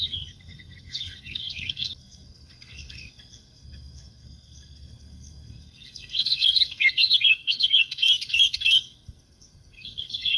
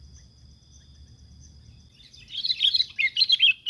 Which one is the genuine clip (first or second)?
second